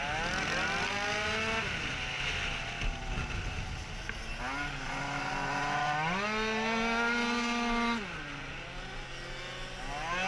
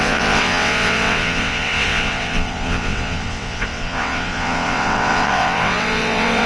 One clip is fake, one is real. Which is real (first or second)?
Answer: first